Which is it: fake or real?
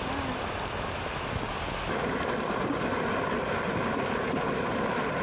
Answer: real